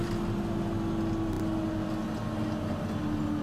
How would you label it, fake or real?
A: real